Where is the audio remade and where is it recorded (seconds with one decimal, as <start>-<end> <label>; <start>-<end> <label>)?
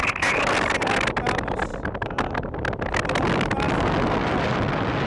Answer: 0.0-5.1 recorded